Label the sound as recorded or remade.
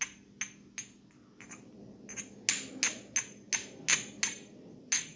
recorded